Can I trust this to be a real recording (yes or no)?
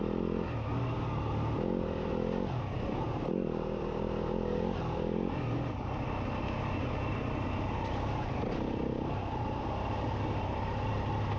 yes